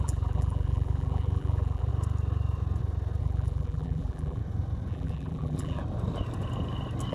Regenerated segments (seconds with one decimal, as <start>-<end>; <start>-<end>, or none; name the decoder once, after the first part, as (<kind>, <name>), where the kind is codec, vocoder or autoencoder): 0.0-1.9 (vocoder, BigVGAN v2); 3.2-4.4; 4.9-5.8